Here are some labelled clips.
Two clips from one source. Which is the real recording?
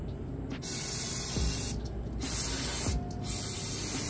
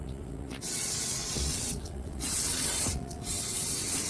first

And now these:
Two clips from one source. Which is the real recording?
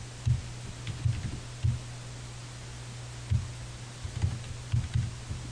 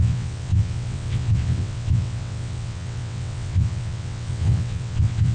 first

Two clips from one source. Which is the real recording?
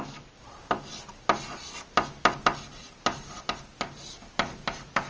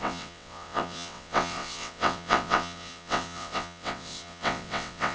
first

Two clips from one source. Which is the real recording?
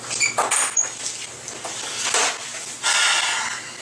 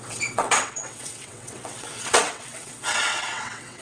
first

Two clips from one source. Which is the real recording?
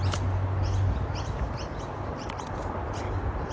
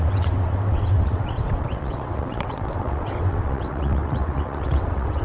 first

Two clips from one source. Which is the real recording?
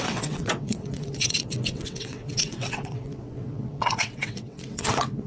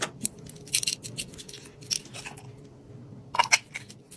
second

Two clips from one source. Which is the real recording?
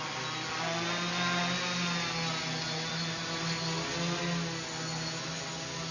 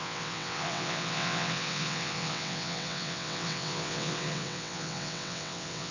first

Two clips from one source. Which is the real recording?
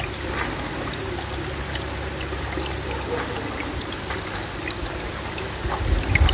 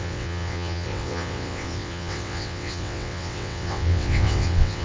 first